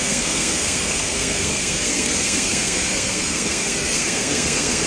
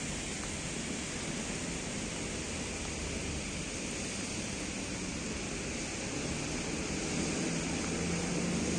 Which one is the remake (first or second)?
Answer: first